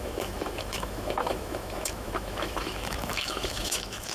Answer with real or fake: fake